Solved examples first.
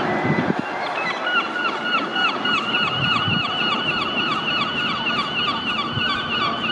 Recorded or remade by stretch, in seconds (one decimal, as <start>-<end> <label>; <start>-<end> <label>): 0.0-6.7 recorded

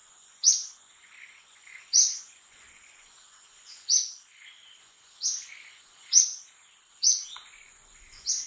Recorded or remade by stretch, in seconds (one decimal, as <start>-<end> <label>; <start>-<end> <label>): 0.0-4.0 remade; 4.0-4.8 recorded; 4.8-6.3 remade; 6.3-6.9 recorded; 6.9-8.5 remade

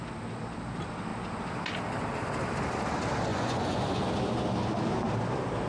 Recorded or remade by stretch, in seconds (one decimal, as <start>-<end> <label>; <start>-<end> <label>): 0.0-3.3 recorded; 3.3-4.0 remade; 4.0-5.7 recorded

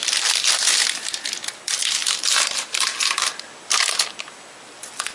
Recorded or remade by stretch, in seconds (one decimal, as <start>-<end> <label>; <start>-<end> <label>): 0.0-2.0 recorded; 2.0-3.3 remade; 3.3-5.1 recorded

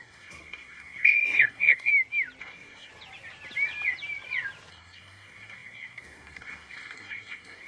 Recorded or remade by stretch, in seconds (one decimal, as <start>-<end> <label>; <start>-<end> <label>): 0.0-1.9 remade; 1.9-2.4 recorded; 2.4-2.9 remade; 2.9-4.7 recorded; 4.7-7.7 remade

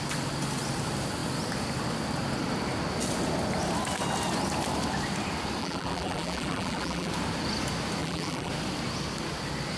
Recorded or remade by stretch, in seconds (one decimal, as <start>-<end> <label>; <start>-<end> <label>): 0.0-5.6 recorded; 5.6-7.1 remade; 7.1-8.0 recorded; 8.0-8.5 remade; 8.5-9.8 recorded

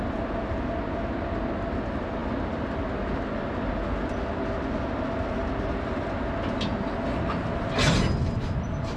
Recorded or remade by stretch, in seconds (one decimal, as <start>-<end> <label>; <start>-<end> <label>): 0.0-9.0 recorded